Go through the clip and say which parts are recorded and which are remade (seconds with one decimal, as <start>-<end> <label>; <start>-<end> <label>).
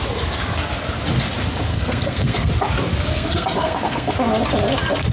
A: 0.0-1.7 recorded; 1.7-2.5 remade; 2.5-3.1 recorded; 3.1-4.1 remade; 4.1-5.1 recorded